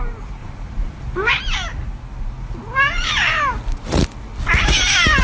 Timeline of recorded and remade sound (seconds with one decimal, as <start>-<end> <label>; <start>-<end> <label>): 0.0-0.4 recorded; 0.4-1.3 remade; 1.3-5.2 recorded